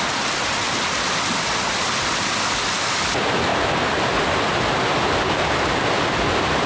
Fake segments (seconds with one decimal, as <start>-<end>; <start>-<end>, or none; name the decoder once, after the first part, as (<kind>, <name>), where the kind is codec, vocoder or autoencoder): none